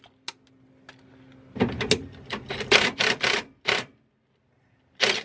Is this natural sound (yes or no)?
yes